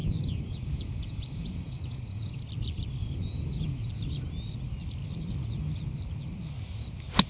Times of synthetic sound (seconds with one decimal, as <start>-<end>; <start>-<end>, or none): 0.0-2.4; 3.0-3.9